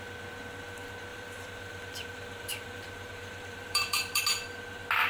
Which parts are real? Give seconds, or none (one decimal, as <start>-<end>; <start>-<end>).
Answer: 0.0-1.1; 4.2-5.1

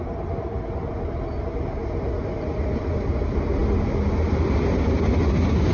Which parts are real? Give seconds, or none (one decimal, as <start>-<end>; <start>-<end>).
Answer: 0.0-5.7

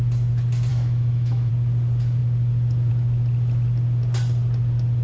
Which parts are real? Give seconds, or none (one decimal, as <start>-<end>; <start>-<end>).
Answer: 0.0-0.7; 1.5-5.0

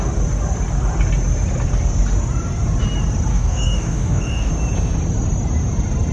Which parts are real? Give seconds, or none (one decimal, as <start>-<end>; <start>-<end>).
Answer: 0.0-3.3; 4.5-6.1